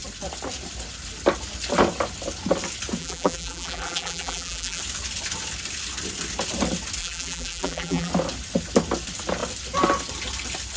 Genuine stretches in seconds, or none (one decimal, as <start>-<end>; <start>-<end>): 0.0-3.0; 4.8-7.0; 8.1-10.8